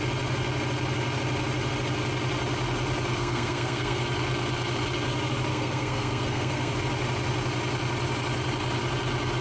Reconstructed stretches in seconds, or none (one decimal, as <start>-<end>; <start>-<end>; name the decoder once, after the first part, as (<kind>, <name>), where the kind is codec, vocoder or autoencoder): 3.1-4.0 (codec, SNAC); 5.5-6.7